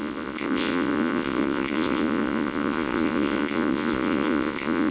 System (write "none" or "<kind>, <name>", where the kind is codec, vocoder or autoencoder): vocoder, Vocos